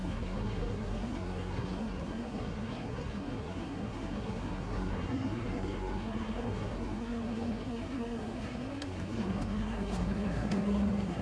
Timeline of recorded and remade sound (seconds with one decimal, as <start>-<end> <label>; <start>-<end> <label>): 0.0-11.2 remade